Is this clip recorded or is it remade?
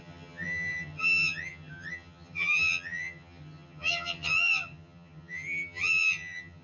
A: remade